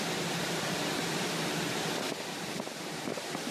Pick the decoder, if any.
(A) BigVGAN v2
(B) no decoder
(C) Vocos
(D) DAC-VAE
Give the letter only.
B